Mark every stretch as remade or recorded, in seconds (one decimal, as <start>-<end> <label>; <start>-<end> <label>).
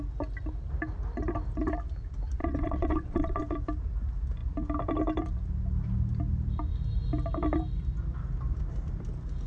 0.0-2.4 recorded; 2.4-3.4 remade; 3.4-9.5 recorded